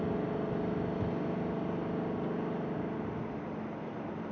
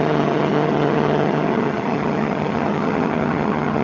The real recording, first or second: first